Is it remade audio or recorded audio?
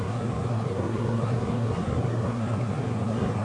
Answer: remade